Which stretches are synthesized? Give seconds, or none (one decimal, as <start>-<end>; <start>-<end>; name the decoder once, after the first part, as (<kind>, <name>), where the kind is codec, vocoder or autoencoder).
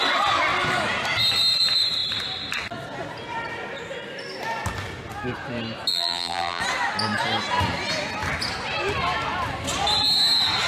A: 5.9-6.6 (vocoder, BigVGAN v2)